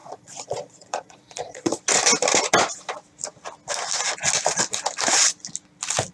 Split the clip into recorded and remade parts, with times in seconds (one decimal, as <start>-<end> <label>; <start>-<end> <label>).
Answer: 0.0-1.8 remade; 1.8-6.1 recorded